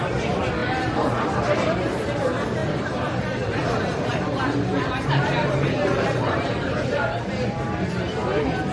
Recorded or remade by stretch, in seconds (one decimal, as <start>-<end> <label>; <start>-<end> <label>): 0.0-0.6 recorded; 0.6-1.4 remade; 1.4-2.6 recorded; 2.6-7.2 remade; 7.2-8.7 recorded